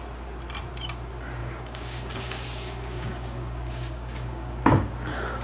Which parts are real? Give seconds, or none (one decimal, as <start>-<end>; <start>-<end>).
0.0-1.4; 4.6-5.4

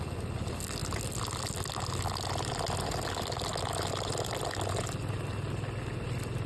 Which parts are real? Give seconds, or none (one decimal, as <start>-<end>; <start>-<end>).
0.0-6.5

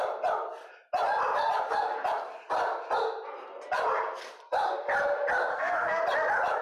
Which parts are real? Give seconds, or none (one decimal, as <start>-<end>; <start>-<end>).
0.0-5.5; 6.0-6.6

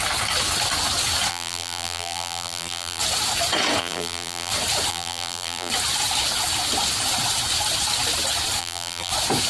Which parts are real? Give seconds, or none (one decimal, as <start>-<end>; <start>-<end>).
0.0-1.3; 3.0-3.8; 4.5-4.9; 5.7-8.6; 9.1-9.5

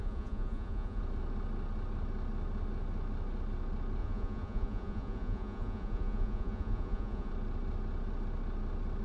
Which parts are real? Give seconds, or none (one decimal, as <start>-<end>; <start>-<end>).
1.0-4.0; 7.3-9.0

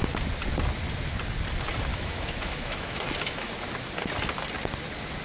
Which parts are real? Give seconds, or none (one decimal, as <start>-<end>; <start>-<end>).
0.0-1.9; 3.5-5.2

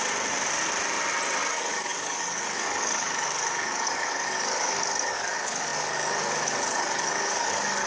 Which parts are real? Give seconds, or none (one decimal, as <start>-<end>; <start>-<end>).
0.0-1.5

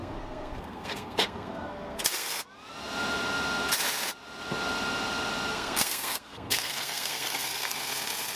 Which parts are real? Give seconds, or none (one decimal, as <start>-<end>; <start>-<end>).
2.3-5.5; 7.8-8.4